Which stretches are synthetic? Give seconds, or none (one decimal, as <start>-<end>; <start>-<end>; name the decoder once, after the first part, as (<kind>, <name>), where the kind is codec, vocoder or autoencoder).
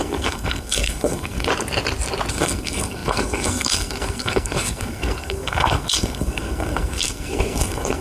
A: 0.0-1.5 (codec, SNAC); 2.3-8.0